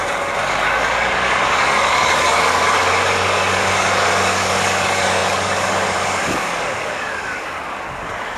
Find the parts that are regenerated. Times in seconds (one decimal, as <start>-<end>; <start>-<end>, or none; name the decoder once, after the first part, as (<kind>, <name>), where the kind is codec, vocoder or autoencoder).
0.0-8.4 (codec, DAC)